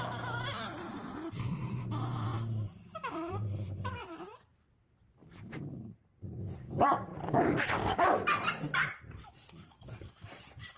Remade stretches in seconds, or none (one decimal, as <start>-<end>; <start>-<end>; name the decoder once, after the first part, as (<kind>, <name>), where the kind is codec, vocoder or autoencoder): 0.0-10.8 (vocoder, BigVGAN v2)